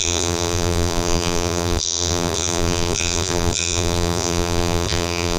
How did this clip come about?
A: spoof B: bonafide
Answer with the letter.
A